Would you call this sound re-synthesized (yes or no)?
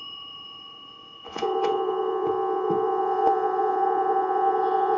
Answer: yes